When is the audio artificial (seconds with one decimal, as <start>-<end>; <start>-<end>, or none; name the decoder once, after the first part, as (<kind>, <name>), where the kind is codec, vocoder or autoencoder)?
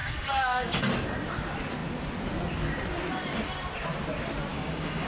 0.0-0.8 (codec, DAC); 4.5-5.1